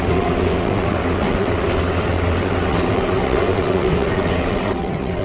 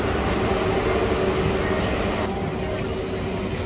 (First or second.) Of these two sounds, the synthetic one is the first